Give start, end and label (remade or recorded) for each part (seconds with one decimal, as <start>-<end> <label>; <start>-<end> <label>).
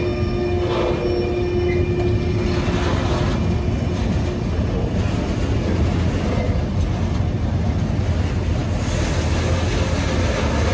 0.0-10.7 recorded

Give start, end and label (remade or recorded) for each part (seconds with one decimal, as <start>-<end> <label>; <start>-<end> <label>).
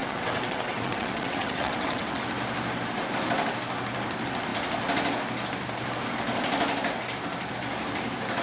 0.0-2.2 remade; 2.2-8.4 recorded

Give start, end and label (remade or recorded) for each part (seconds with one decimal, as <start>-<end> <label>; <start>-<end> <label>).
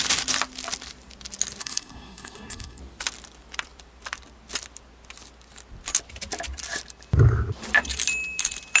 0.0-1.6 recorded; 1.6-2.8 remade; 2.8-8.8 recorded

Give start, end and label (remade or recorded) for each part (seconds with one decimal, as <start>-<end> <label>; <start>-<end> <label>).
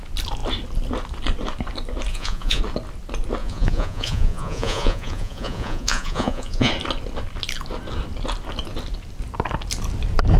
0.0-2.1 recorded; 2.1-2.6 remade; 2.6-3.4 recorded; 3.4-6.7 remade; 6.7-10.4 recorded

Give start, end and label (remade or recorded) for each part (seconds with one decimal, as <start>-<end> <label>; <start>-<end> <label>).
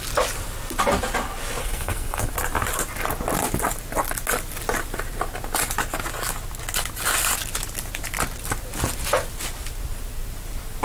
0.0-1.6 recorded; 1.6-2.3 remade; 2.3-10.8 recorded